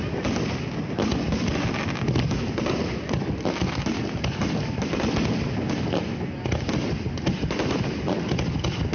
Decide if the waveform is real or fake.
real